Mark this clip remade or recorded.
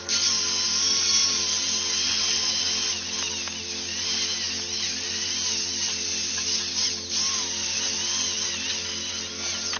recorded